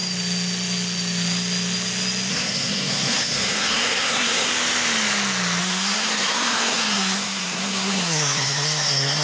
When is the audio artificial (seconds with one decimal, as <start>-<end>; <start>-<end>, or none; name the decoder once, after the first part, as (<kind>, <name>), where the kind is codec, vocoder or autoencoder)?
2.3-4.5 (codec, SNAC); 5.6-9.2